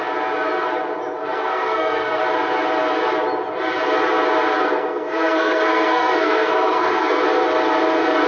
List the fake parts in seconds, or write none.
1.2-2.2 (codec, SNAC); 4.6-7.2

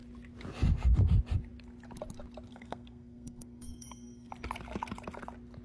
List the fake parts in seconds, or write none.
2.5-4.3 (codec, SNAC)

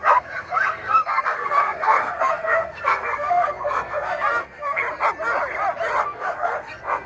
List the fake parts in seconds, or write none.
0.0-4.8 (codec, SNAC); 6.0-7.1